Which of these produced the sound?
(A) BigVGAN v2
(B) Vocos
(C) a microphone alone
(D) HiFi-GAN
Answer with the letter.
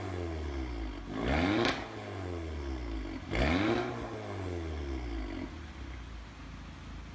C